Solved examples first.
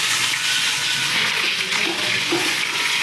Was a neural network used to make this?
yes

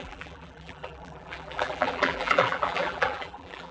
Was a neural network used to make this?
yes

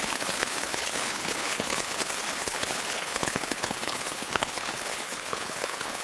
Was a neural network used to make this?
yes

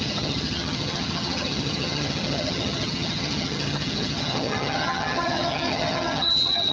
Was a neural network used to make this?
yes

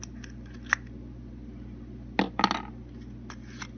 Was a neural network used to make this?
no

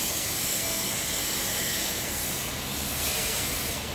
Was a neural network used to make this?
yes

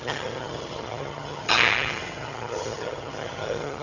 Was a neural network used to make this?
yes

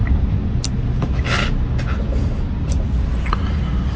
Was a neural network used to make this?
no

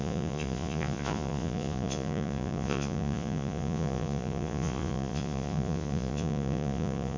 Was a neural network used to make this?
yes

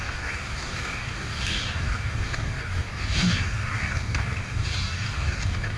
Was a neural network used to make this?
yes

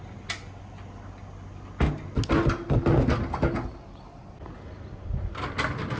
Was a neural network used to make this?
no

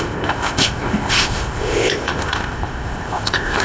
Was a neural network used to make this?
yes